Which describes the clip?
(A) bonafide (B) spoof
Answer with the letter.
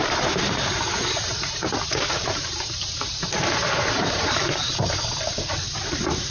B